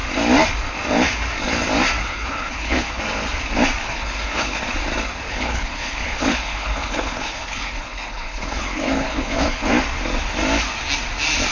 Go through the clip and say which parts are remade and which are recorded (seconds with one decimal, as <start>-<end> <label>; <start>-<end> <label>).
0.0-2.0 recorded; 2.0-3.0 remade; 3.0-3.8 recorded; 3.8-4.6 remade; 4.6-5.3 recorded; 5.3-9.7 remade; 9.7-11.5 recorded